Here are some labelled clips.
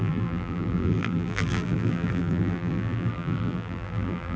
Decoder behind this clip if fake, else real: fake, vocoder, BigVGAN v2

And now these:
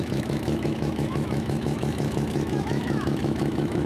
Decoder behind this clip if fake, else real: fake, autoencoder, DAC-VAE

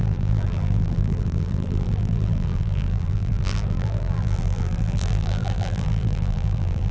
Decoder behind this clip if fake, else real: fake, vocoder, BigVGAN v2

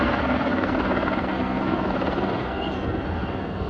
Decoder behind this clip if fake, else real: fake, codec, SNAC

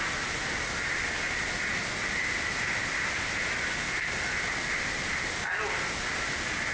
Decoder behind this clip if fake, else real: real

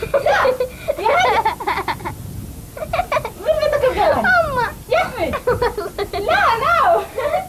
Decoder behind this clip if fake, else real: real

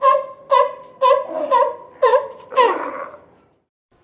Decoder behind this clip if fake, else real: fake, vocoder, BigVGAN v2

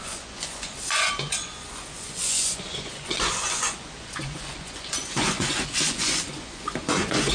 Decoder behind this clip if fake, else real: fake, vocoder, Vocos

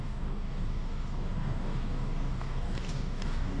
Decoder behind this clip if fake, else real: fake, codec, DAC